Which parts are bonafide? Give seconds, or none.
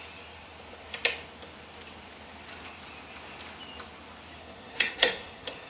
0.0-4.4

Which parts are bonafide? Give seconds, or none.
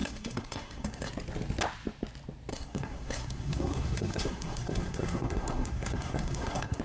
1.1-2.5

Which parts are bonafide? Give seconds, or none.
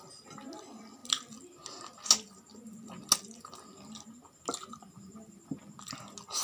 0.0-6.4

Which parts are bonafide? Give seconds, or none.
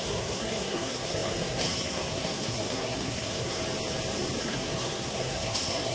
3.6-4.4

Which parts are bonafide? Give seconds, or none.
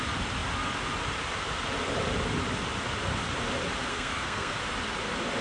0.0-3.9; 4.6-5.4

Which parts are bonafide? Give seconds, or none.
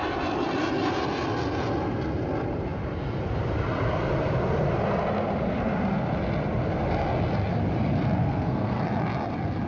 0.0-8.2; 8.8-9.7